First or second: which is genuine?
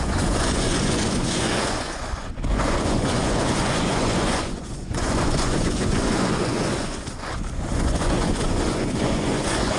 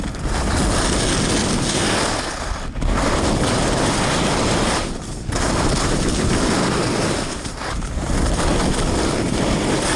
second